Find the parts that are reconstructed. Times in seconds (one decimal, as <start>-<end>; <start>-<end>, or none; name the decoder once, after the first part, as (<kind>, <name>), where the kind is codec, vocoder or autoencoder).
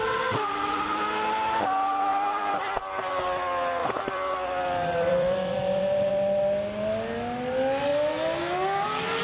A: 2.1-3.1 (vocoder, BigVGAN v2); 3.8-6.1